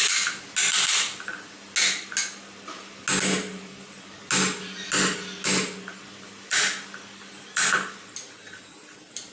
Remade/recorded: recorded